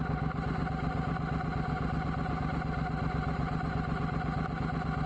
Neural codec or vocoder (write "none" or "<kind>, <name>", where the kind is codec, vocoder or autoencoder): none